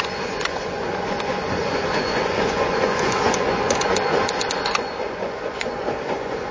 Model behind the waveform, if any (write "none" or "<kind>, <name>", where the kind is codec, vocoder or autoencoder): vocoder, Vocos